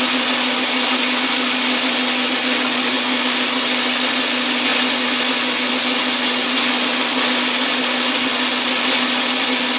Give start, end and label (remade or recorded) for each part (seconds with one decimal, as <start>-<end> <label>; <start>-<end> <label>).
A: 0.0-9.8 recorded